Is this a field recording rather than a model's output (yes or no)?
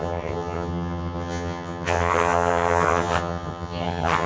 no